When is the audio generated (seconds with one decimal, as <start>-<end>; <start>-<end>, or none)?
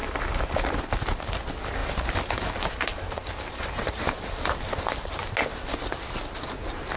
0.0-0.8; 1.8-2.5; 2.9-5.2